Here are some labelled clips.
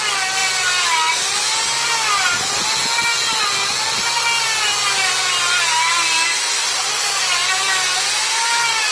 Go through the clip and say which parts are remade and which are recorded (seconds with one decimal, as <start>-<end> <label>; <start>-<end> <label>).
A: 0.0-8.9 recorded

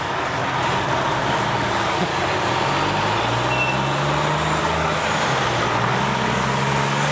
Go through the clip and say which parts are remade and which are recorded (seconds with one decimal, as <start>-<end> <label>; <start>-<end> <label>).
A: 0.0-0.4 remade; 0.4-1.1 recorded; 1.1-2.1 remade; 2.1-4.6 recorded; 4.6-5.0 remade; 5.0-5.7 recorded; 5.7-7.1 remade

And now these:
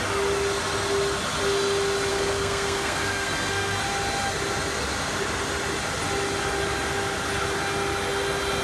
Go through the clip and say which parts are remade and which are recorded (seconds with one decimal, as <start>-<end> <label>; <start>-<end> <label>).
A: 0.0-2.1 recorded; 2.1-3.8 remade; 3.8-8.6 recorded

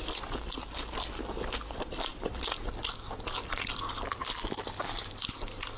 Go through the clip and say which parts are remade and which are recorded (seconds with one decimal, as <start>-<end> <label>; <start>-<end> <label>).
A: 0.0-5.8 recorded